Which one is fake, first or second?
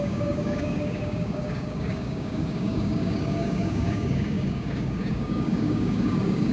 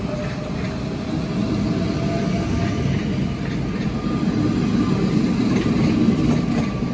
first